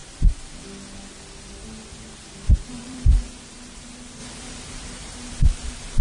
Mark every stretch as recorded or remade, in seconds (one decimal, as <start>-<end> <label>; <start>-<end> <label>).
0.0-2.7 recorded; 2.7-3.3 remade; 3.3-4.2 recorded; 4.2-6.0 remade